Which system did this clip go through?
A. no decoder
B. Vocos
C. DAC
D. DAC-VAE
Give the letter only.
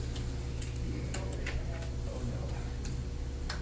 A